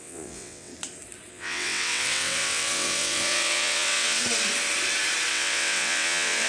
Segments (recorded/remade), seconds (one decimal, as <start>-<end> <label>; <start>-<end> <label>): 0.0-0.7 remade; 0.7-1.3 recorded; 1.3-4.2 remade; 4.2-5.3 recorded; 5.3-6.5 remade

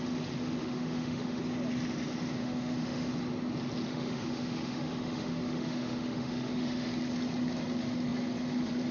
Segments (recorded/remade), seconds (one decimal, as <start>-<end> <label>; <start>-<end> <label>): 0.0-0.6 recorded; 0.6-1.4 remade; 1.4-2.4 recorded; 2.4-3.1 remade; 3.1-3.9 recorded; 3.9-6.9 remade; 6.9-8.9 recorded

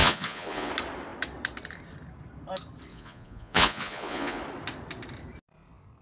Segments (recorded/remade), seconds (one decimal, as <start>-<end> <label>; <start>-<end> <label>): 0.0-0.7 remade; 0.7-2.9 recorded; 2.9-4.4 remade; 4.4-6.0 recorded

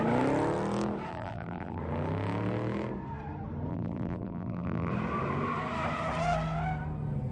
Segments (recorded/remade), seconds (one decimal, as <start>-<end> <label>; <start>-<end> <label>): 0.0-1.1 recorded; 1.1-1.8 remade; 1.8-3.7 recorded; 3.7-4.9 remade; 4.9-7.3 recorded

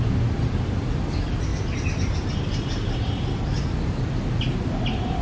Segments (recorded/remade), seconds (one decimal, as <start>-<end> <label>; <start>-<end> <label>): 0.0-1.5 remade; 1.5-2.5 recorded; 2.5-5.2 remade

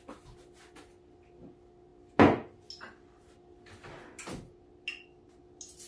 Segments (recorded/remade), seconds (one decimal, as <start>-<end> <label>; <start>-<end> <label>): 0.0-5.9 recorded